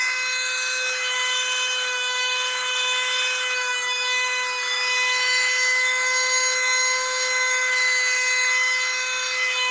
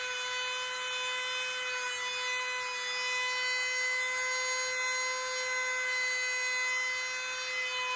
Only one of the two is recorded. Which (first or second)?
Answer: second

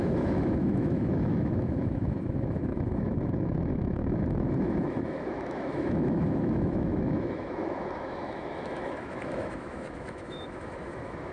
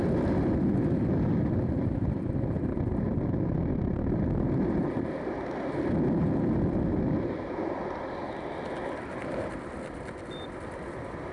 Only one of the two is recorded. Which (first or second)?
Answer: second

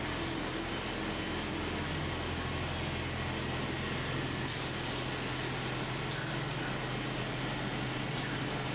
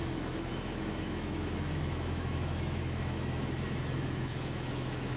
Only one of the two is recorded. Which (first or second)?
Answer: first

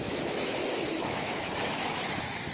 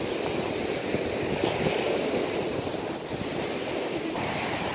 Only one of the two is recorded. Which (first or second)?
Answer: second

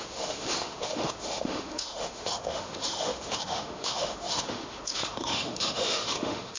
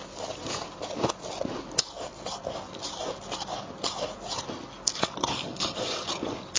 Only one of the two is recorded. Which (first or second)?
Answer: second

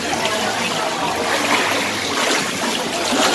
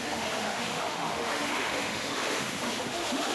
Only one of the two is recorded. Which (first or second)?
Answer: first